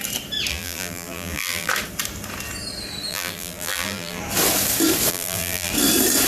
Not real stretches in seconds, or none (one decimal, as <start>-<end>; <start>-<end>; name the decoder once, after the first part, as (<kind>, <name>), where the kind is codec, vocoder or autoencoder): 0.5-1.7 (vocoder, BigVGAN v2); 3.1-4.2; 5.1-5.7

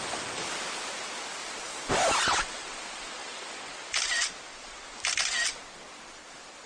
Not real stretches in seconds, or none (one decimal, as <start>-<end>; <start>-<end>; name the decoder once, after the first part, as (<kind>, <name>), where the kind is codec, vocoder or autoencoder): 3.2-4.5 (vocoder, BigVGAN v2)

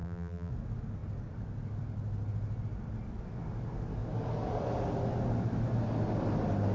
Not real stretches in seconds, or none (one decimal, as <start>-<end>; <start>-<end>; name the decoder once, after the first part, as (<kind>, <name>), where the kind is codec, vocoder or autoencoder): 0.0-0.5 (vocoder, BigVGAN v2)

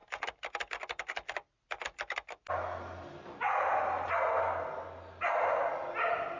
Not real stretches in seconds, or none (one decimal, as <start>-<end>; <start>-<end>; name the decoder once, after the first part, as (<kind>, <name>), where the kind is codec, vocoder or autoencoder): none

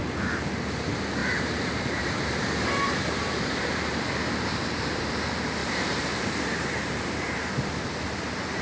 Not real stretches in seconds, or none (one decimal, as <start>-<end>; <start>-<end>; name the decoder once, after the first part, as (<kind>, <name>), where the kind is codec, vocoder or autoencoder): 1.2-3.8 (vocoder, BigVGAN v2); 4.5-5.1; 5.6-7.8